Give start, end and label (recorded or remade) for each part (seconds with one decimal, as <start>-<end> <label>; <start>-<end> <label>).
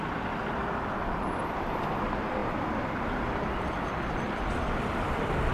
0.0-0.6 recorded; 0.6-1.4 remade; 1.4-2.4 recorded; 2.4-5.5 remade